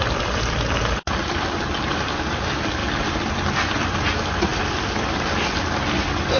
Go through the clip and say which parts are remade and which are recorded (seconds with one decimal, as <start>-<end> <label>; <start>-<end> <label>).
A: 0.0-4.5 recorded; 4.5-5.6 remade; 5.6-6.4 recorded